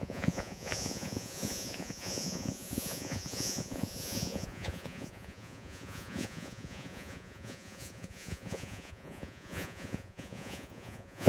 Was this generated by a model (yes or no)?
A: yes